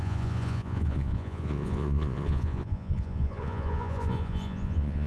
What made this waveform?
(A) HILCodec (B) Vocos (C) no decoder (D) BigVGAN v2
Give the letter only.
B